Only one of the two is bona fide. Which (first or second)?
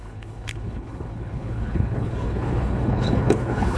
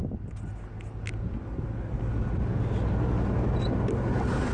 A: second